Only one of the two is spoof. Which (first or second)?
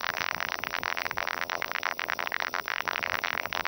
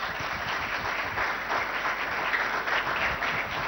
first